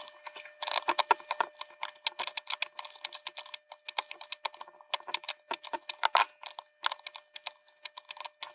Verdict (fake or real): real